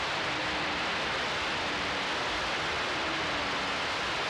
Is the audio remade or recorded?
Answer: recorded